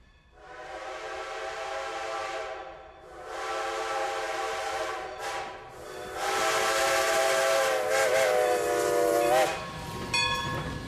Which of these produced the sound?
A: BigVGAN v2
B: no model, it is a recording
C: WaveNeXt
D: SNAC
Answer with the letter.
B